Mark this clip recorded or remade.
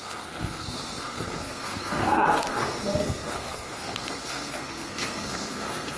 remade